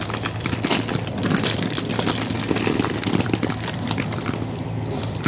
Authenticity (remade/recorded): remade